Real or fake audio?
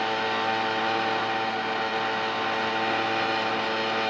real